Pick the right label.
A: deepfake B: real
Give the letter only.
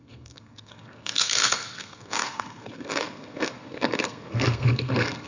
A